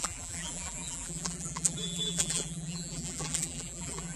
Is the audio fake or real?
fake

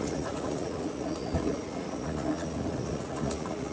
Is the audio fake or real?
fake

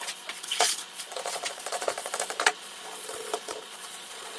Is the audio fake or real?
fake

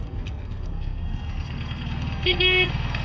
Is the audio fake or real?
fake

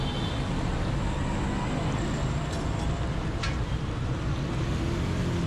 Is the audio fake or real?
real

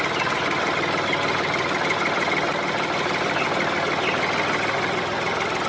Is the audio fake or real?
real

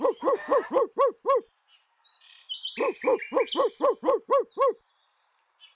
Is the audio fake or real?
fake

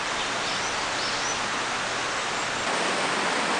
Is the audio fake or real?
real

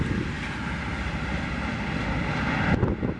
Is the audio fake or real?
real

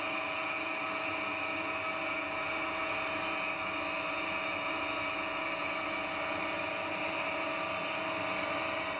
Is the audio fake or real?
real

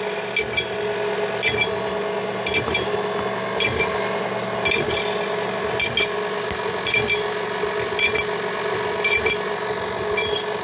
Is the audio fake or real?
real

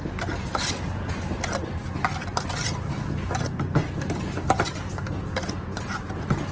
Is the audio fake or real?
real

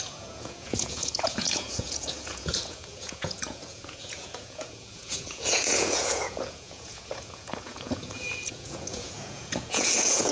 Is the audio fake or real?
fake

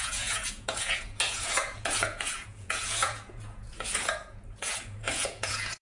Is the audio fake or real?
fake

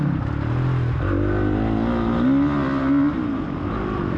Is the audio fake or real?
real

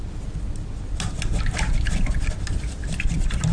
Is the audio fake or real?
real